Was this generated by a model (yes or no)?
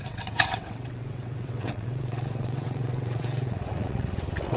yes